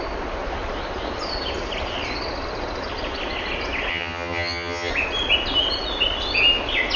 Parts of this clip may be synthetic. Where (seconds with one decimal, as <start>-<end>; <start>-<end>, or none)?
3.9-4.9